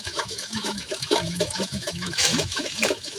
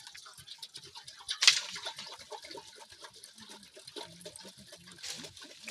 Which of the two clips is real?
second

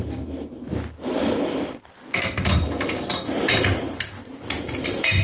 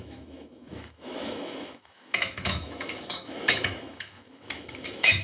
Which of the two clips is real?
first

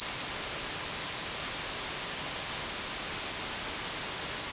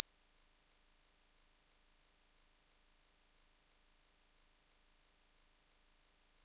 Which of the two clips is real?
first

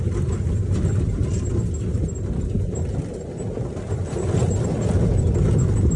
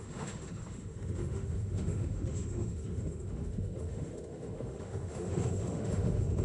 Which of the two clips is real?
first